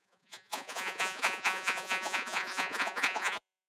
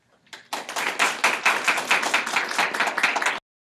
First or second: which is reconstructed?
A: first